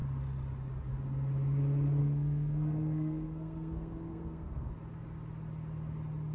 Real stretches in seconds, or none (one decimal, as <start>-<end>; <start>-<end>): 0.0-2.0; 4.7-6.3